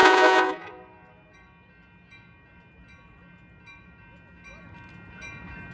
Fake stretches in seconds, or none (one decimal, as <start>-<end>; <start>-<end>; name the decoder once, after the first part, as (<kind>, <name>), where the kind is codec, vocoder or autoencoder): 0.0-0.7 (vocoder, Vocos)